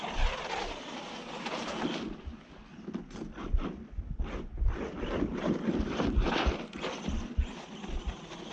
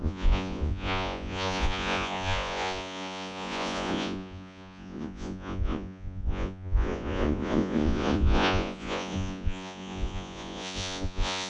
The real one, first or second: first